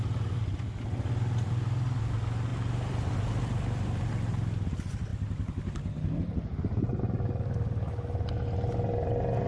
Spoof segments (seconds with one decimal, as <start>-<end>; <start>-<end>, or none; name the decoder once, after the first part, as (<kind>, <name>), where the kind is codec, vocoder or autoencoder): 2.5-4.3 (vocoder, BigVGAN v2); 5.1-6.2